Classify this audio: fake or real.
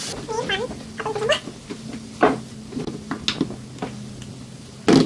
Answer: real